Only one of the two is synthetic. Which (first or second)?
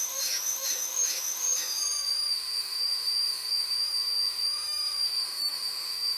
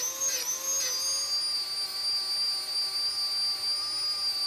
first